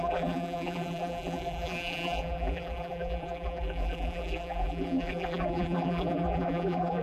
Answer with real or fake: fake